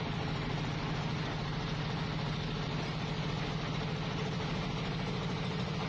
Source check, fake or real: real